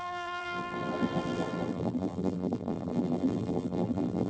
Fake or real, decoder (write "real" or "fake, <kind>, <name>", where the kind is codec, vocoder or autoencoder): fake, vocoder, BigVGAN v2